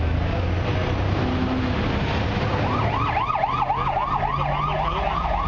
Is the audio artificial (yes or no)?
no